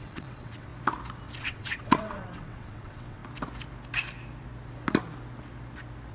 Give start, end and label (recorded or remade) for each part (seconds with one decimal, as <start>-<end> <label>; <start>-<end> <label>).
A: 0.0-0.7 remade; 0.7-1.4 recorded; 1.4-3.2 remade; 3.2-6.1 recorded